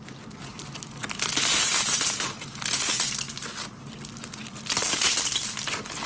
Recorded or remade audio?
recorded